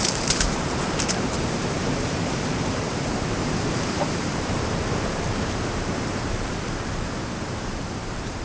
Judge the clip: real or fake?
fake